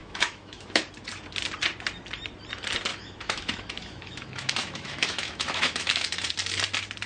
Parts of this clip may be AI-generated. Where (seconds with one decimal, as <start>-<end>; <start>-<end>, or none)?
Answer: 0.0-0.8; 2.9-6.3